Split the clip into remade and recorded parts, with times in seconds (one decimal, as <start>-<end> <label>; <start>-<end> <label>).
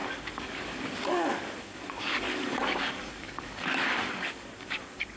0.0-5.2 remade